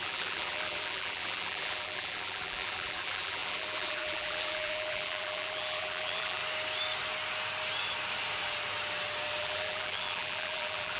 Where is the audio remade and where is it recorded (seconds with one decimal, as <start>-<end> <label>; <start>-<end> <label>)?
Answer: 0.0-6.4 remade; 6.4-9.4 recorded; 9.4-11.0 remade